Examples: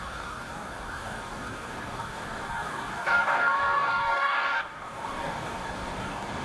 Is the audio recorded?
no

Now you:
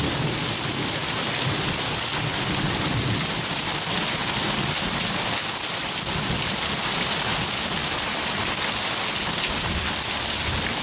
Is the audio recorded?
yes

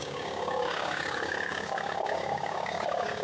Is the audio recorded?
no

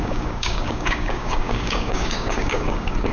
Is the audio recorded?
no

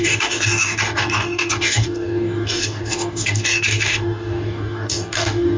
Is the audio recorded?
no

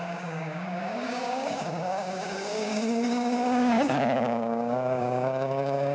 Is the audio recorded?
no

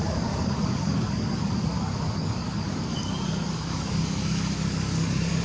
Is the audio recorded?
no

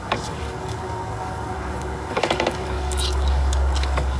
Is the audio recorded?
no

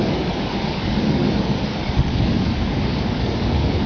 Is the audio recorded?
no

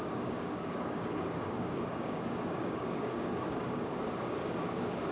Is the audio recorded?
no